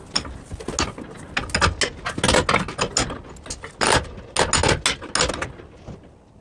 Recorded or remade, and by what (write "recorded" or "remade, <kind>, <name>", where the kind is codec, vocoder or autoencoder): recorded